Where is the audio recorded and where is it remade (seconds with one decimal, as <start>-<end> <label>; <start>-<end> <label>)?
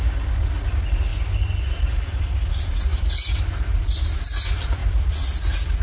0.0-5.8 recorded